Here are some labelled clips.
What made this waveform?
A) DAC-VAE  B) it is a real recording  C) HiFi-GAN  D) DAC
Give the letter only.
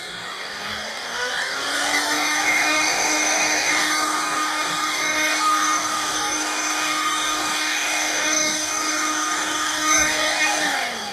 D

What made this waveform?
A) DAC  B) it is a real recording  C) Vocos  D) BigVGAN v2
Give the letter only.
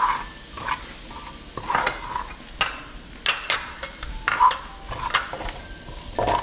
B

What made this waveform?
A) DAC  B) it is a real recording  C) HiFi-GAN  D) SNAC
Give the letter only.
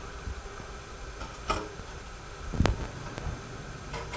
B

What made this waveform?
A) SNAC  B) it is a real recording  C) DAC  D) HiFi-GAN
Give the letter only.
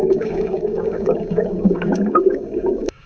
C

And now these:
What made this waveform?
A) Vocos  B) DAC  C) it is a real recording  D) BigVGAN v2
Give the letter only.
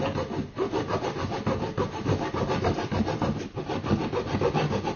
C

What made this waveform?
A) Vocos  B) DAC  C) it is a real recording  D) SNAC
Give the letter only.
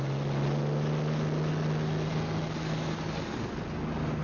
C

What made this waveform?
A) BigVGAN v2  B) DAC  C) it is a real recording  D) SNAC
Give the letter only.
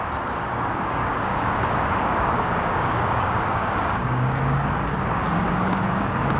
B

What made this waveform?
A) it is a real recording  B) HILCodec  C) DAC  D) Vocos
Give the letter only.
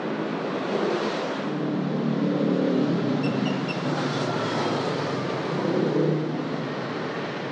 A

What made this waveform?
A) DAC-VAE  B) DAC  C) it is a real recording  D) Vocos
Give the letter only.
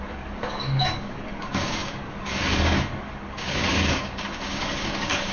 B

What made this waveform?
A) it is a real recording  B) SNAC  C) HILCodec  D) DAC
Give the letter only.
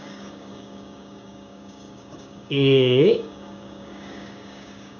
D